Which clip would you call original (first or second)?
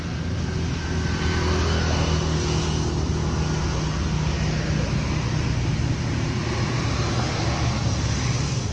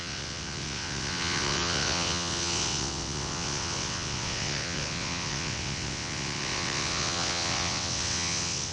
first